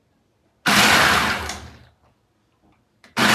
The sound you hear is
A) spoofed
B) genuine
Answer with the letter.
B